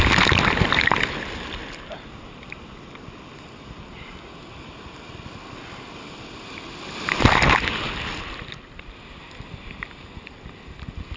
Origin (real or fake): real